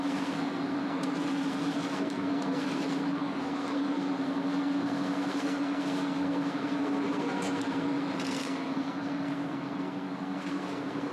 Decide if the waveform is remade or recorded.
remade